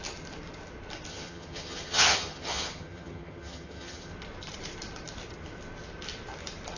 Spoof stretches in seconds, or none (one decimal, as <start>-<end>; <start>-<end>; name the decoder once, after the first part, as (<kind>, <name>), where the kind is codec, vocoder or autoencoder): 1.1-4.1 (vocoder, HiFi-GAN)